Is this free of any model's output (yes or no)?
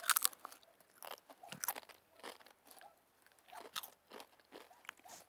yes